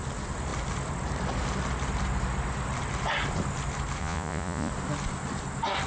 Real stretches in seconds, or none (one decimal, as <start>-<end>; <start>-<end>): 0.0-4.0; 4.7-5.9